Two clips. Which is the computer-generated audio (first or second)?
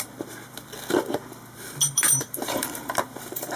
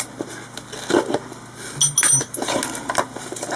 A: first